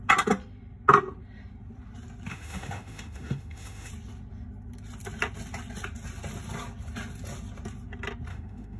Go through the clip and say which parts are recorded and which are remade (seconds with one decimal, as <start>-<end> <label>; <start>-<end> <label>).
0.0-2.3 recorded; 2.3-3.9 remade; 3.9-8.3 recorded; 8.3-8.8 remade